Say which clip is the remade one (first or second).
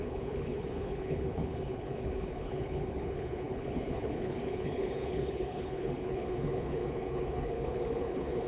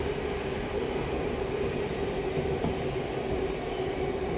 first